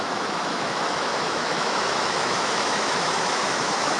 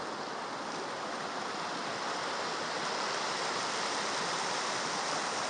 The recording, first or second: second